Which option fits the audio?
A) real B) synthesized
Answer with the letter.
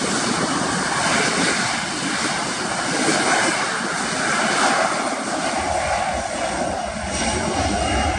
A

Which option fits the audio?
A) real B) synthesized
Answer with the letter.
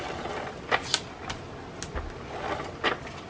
A